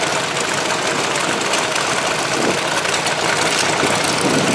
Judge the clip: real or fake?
real